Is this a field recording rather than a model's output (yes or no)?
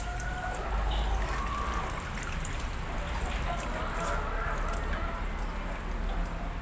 yes